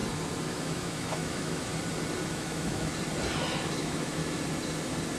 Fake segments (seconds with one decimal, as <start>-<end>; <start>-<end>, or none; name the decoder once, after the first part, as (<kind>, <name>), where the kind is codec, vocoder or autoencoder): 0.5-1.7 (autoencoder, DAC-VAE); 2.3-2.9; 3.8-4.2